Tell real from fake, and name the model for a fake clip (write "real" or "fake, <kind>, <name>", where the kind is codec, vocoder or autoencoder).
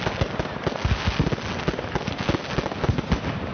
real